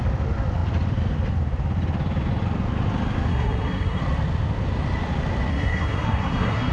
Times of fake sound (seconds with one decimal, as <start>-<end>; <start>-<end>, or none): 3.3-4.0; 5.5-6.7